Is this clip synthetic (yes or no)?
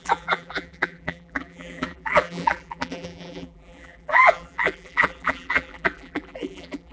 yes